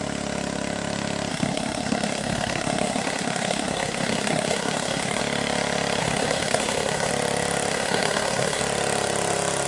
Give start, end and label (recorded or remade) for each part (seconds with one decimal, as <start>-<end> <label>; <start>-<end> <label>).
0.0-1.3 recorded; 1.3-5.2 remade; 5.2-6.0 recorded; 6.0-7.1 remade; 7.1-7.7 recorded; 7.7-8.6 remade; 8.6-9.7 recorded